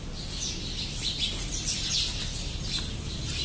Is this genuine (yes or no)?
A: yes